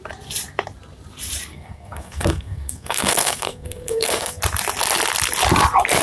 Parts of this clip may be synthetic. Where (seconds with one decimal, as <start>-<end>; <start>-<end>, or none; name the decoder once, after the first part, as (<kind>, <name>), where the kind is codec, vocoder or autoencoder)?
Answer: 1.5-4.4 (codec, SNAC)